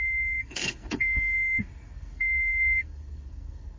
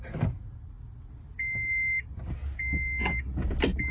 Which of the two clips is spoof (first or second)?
first